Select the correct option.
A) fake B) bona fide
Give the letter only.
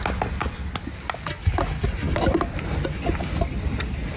B